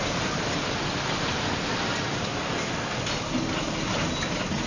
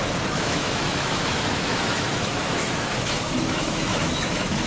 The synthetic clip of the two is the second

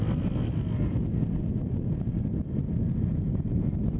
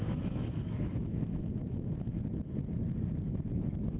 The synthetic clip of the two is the second